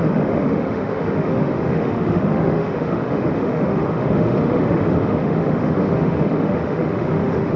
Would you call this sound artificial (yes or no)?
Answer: yes